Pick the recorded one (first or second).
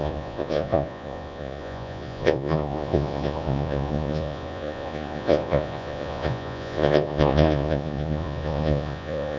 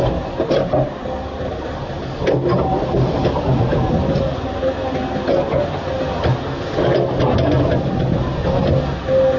second